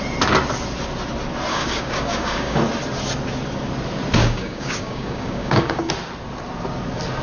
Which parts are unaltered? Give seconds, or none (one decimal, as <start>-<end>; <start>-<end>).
0.0-1.5; 2.6-4.2; 5.9-7.2